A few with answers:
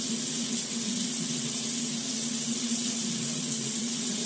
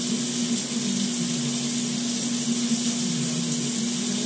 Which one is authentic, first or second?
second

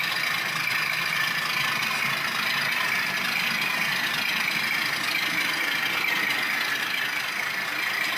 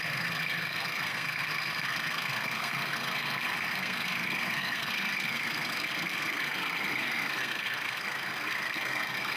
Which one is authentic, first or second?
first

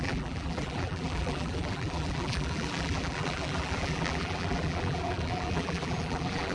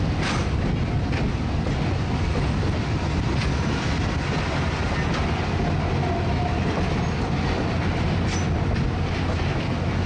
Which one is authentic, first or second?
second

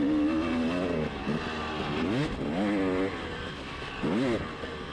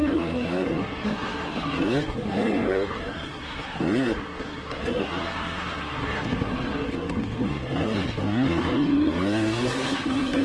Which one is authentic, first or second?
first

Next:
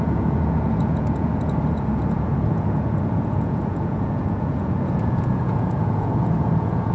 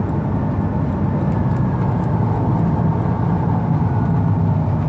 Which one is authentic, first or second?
second